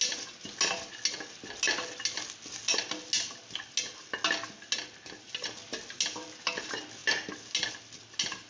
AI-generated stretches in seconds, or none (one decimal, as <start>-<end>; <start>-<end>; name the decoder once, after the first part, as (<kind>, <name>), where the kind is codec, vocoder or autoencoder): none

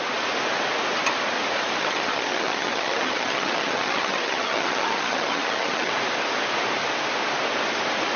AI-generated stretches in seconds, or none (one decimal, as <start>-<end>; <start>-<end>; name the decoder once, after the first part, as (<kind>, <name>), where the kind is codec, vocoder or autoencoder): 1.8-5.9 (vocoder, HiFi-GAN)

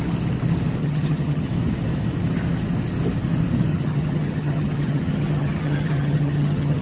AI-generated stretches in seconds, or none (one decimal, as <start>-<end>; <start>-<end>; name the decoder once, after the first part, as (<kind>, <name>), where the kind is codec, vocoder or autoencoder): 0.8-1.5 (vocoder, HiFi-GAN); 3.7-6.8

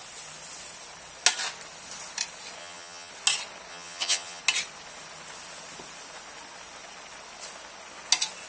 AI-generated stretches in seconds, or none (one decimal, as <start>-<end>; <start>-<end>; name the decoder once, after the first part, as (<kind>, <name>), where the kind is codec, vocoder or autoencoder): 2.6-3.1 (vocoder, HiFi-GAN); 3.7-4.4

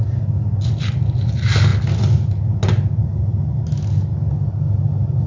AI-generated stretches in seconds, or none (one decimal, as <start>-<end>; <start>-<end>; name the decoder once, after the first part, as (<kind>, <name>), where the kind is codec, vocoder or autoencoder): none

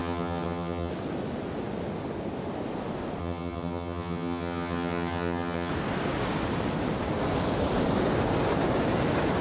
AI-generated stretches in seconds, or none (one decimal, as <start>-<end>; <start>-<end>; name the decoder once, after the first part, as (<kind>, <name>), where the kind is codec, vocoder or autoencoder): 0.0-0.9 (vocoder, HiFi-GAN); 3.2-5.7